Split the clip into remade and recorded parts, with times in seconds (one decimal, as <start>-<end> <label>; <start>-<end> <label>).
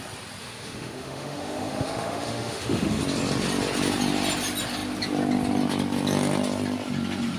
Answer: 0.0-0.4 recorded; 0.4-3.0 remade; 3.0-7.4 recorded